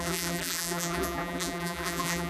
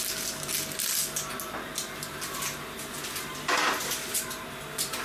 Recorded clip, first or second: second